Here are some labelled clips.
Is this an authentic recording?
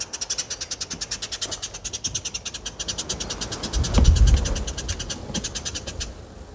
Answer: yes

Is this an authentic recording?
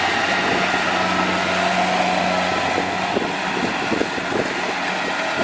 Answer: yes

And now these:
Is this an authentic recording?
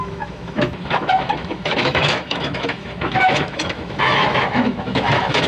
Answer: no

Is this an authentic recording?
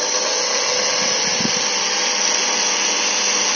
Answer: yes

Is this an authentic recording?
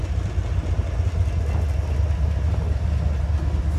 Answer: yes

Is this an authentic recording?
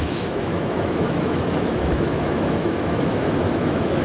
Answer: no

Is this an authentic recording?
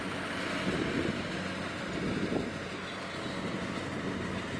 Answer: yes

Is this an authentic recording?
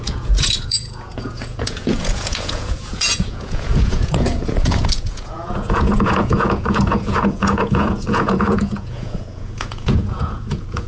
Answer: no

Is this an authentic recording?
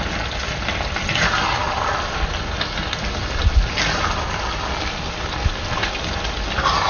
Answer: yes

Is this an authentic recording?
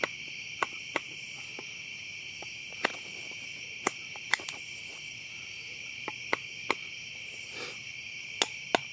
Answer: yes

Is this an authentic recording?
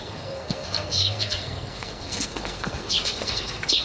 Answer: no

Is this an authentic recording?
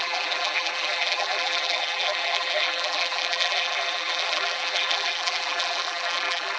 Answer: no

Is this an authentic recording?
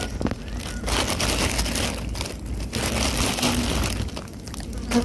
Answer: yes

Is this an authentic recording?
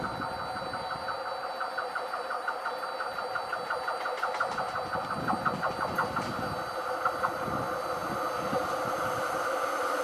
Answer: yes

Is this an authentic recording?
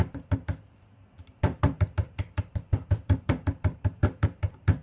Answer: no